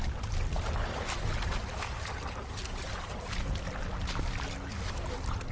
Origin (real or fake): real